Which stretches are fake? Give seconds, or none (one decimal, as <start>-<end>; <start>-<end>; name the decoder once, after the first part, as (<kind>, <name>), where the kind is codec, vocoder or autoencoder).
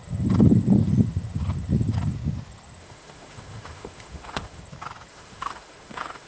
2.8-4.6 (autoencoder, DAC-VAE); 5.1-6.3